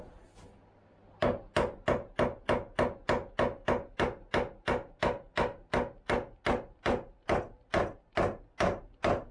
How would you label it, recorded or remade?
recorded